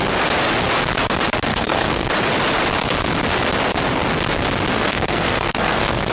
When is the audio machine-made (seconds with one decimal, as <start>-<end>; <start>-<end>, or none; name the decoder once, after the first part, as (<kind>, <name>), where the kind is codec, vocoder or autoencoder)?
1.5-2.1 (codec, SNAC); 4.7-6.1